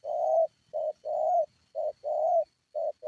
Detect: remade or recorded recorded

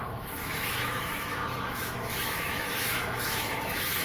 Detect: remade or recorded remade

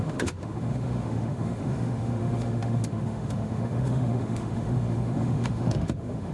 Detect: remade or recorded remade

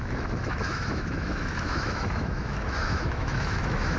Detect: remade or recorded remade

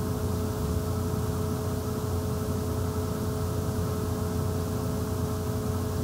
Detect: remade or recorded recorded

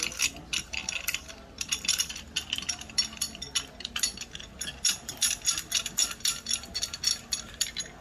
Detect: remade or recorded recorded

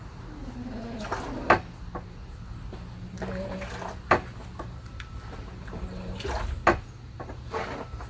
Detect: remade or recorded recorded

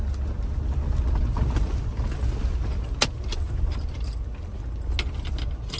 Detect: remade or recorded recorded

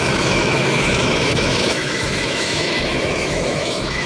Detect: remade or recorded remade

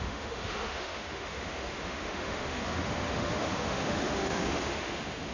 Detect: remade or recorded remade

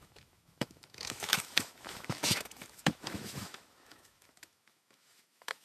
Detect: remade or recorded remade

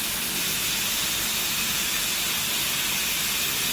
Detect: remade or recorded recorded